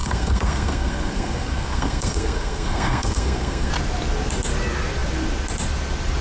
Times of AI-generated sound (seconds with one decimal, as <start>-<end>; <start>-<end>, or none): 0.0-3.7